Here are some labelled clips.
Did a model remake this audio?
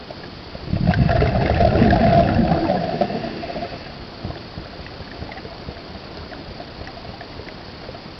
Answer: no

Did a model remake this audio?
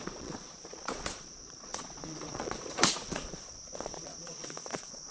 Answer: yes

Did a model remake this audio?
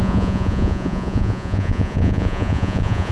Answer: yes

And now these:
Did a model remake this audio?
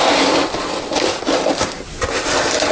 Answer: no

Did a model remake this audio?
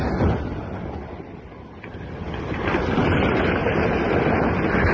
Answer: no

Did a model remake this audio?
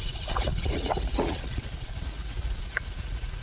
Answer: yes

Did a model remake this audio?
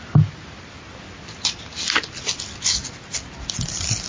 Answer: no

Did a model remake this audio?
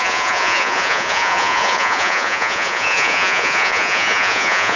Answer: yes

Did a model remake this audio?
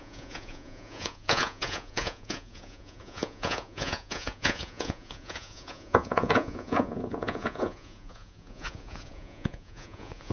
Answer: yes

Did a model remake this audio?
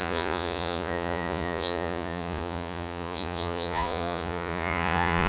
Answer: yes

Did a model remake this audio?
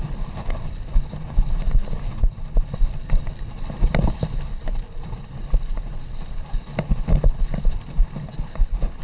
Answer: no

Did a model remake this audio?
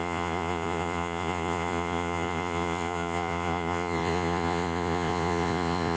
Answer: yes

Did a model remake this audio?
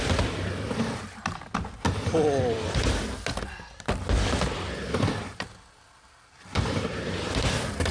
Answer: no